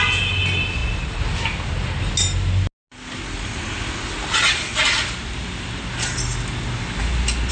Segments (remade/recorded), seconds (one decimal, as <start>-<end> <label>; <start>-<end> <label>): 0.0-7.5 recorded